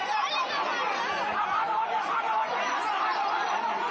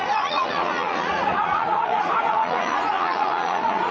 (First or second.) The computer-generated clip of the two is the second